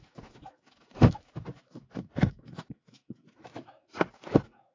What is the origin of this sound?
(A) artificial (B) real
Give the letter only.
A